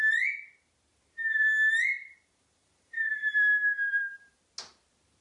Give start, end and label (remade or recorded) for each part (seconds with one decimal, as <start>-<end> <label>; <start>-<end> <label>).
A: 0.0-1.3 recorded; 1.3-4.4 remade; 4.4-5.2 recorded